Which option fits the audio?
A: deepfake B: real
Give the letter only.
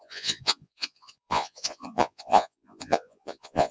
A